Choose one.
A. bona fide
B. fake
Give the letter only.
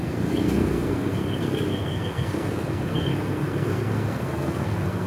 B